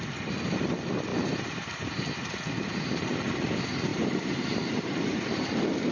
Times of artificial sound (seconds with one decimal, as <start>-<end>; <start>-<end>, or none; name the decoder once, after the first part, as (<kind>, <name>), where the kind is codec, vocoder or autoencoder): 3.9-5.4 (vocoder, BigVGAN v2)